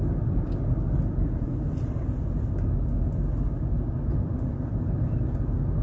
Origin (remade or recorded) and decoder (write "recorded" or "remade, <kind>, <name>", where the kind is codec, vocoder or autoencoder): recorded